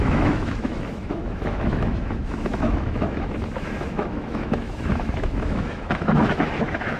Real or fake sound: fake